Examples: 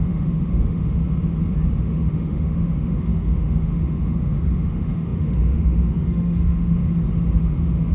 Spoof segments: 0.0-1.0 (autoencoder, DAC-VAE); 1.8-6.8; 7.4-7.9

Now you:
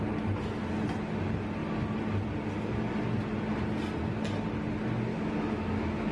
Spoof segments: 5.1-6.1 (autoencoder, DAC-VAE)

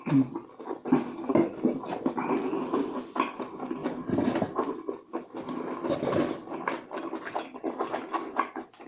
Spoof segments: none

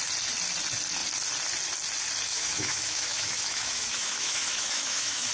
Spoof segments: 2.3-5.3 (autoencoder, DAC-VAE)

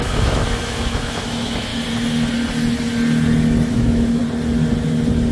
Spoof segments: 0.0-1.7 (autoencoder, DAC-VAE); 3.7-4.2

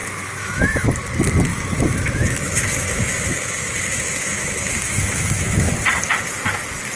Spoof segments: 0.0-0.9 (autoencoder, DAC-VAE); 1.5-5.7

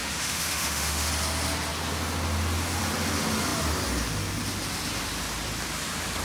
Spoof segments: 0.0-1.1 (autoencoder, DAC-VAE)